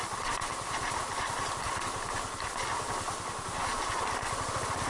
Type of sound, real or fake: real